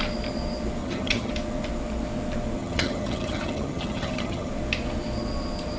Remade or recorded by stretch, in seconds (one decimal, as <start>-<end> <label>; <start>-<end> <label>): 0.0-0.8 recorded; 0.8-1.3 remade; 1.3-2.6 recorded; 2.6-4.5 remade; 4.5-5.8 recorded

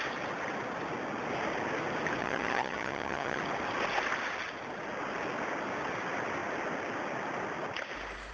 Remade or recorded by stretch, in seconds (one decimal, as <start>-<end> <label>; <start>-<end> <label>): 0.0-2.2 recorded; 2.2-3.4 remade; 3.4-8.3 recorded

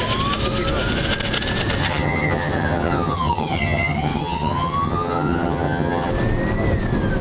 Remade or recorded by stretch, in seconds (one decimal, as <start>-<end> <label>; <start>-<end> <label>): 0.0-1.8 recorded; 1.8-6.1 remade; 6.1-7.2 recorded

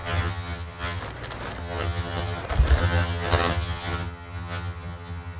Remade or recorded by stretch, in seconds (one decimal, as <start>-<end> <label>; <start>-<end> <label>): 0.0-1.0 remade; 1.0-1.6 recorded; 1.6-2.4 remade; 2.4-2.8 recorded; 2.8-5.4 remade

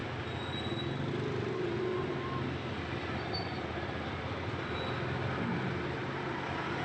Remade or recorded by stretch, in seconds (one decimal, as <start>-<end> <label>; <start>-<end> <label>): 0.0-6.8 recorded